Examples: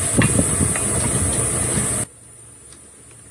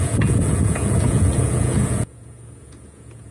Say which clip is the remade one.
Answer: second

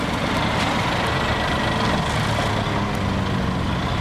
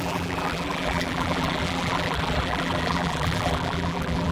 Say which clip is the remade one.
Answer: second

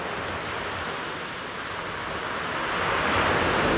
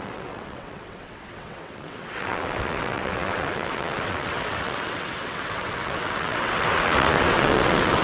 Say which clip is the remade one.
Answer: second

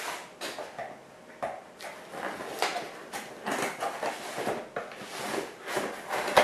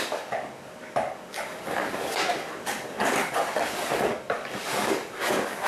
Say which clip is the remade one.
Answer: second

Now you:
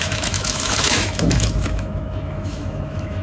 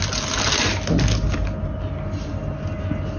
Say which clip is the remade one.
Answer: first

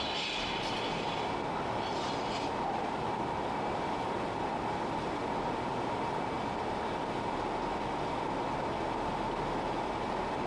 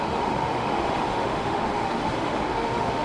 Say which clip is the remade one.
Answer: second